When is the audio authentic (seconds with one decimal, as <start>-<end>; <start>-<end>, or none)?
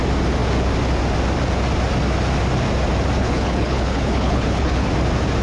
0.0-3.2; 4.9-5.4